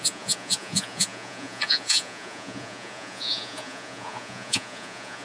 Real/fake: fake